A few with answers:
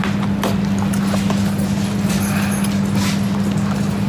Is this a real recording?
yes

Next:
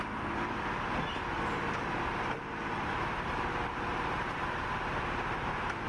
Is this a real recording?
no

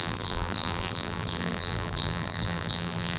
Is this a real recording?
no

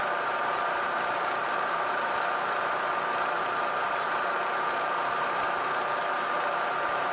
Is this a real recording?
no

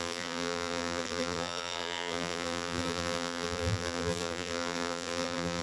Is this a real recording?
no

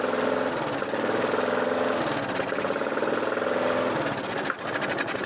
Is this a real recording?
yes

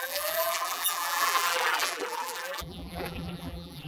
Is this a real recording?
no